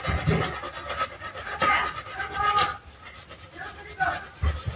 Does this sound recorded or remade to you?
recorded